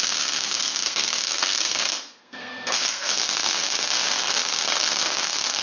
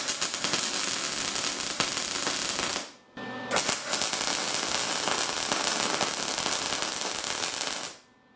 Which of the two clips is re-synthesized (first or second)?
first